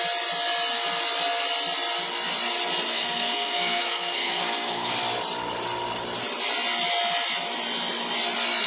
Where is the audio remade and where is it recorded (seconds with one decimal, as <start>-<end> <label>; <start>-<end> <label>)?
0.0-2.9 recorded; 2.9-4.9 remade; 4.9-8.7 recorded

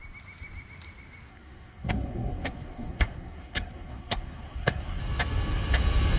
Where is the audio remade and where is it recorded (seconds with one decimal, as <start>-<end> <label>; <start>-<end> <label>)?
0.0-1.3 recorded; 1.3-5.0 remade; 5.0-6.2 recorded

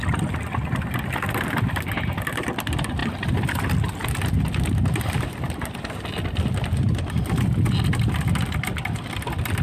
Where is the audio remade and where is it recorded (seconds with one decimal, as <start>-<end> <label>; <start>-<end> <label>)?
0.0-9.6 remade

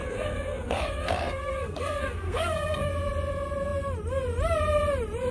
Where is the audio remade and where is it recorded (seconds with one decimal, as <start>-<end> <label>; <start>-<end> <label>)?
0.0-2.9 remade; 2.9-5.3 recorded